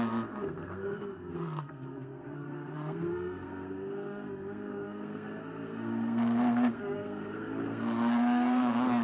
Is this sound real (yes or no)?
no